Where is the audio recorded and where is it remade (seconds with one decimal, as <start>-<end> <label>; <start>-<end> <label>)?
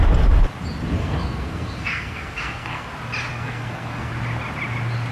0.0-1.0 recorded; 1.0-2.9 remade; 2.9-3.3 recorded; 3.3-4.1 remade; 4.1-5.1 recorded